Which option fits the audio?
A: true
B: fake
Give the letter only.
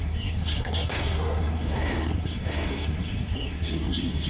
B